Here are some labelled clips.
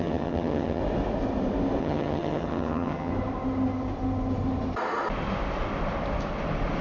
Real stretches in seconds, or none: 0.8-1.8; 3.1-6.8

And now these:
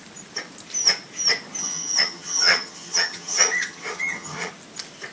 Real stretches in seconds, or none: 0.0-1.6; 4.5-5.1

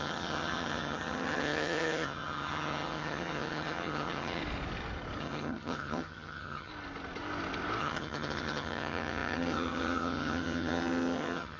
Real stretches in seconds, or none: 4.4-5.2; 6.7-7.8

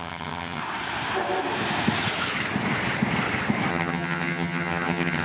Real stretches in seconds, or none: 0.6-3.7

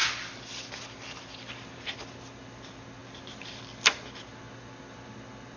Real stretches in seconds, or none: 0.0-5.6